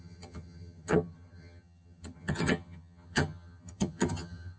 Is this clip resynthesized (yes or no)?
yes